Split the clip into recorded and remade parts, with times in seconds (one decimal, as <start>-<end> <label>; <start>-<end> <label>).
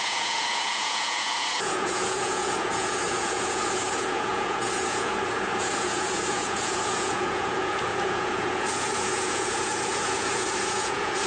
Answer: 0.0-11.3 remade